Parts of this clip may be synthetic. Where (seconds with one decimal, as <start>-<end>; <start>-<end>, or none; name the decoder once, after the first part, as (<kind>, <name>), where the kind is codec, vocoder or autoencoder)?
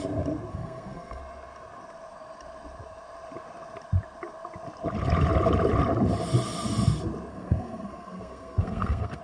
0.5-1.2 (codec, SNAC); 7.3-9.2